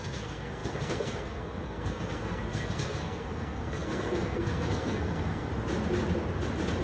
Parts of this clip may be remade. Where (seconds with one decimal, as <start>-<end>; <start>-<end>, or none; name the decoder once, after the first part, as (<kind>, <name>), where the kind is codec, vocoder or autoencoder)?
0.0-5.5 (codec, SNAC)